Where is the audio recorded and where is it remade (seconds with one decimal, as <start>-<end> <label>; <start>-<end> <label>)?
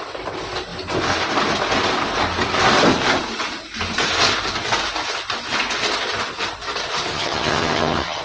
0.0-7.1 recorded; 7.1-8.2 remade